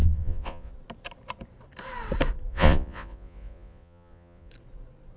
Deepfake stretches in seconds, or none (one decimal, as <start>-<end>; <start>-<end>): 0.0-0.7; 2.5-4.5